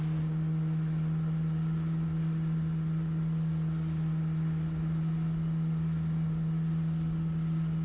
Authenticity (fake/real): real